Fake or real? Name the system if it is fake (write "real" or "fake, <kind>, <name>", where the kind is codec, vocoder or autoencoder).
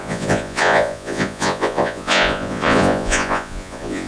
fake, vocoder, Vocos